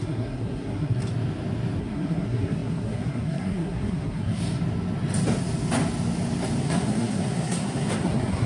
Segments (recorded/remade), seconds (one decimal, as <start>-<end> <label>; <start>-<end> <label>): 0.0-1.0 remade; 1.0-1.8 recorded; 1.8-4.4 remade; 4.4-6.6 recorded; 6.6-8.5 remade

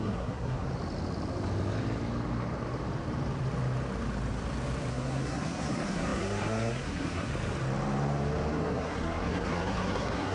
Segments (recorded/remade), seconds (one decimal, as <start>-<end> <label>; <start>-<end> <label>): 0.0-0.7 remade; 0.7-4.9 recorded; 4.9-7.3 remade; 7.3-8.5 recorded; 8.5-10.3 remade

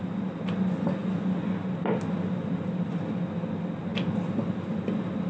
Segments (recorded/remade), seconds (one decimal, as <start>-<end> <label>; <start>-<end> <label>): 0.0-5.3 recorded

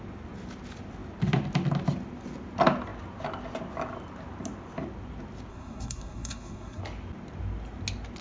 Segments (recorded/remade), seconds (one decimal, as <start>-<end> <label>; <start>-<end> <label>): 0.0-5.5 recorded; 5.5-6.8 remade; 6.8-8.2 recorded

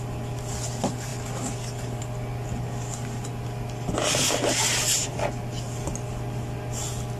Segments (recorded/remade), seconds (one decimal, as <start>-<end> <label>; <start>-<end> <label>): 0.0-7.2 recorded

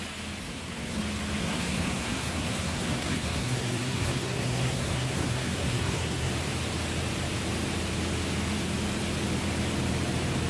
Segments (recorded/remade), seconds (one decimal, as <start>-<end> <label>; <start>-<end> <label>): 0.0-0.4 recorded; 0.4-1.0 remade; 1.0-1.4 recorded; 1.4-6.3 remade; 6.3-10.5 recorded

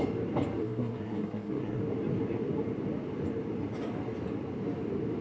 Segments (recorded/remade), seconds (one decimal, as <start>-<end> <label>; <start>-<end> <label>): 0.0-0.6 recorded; 0.6-1.8 remade; 1.8-5.2 recorded

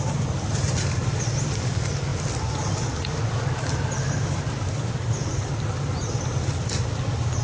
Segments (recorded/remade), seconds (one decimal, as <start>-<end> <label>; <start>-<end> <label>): 0.0-7.4 recorded